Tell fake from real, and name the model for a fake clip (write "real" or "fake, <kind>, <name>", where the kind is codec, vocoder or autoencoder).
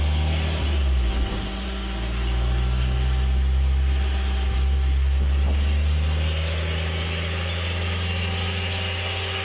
real